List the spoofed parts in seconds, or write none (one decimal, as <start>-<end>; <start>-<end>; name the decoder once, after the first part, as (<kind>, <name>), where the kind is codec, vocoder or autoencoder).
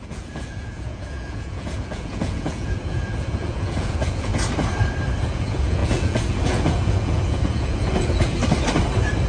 0.0-4.3 (vocoder, Vocos); 5.2-8.4